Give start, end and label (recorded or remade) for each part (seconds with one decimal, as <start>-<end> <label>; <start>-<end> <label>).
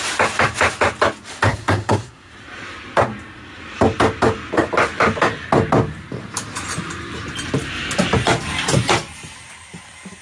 0.0-1.5 recorded; 1.5-2.3 remade; 2.3-10.2 recorded